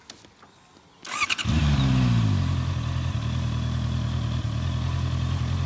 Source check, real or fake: real